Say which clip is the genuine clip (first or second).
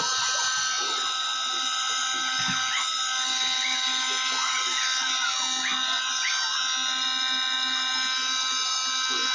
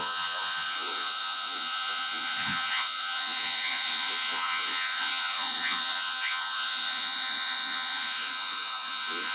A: first